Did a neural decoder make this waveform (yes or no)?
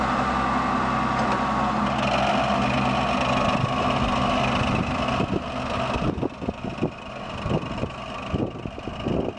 no